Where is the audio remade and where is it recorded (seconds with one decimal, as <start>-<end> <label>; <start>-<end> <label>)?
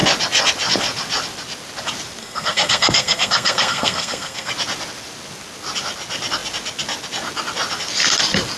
0.0-2.2 recorded; 2.2-4.5 remade; 4.5-8.6 recorded